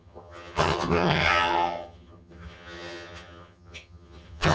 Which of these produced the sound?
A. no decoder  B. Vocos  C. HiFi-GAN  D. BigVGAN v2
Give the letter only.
C